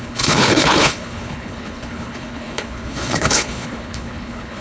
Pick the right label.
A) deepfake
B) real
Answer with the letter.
A